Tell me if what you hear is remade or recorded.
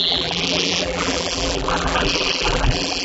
remade